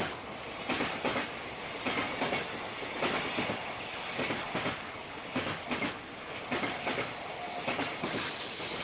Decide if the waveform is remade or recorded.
recorded